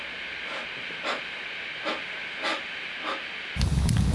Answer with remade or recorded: recorded